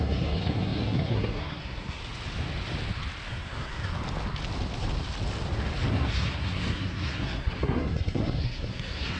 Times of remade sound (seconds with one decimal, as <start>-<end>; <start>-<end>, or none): 0.0-2.0; 3.3-4.0; 5.9-9.2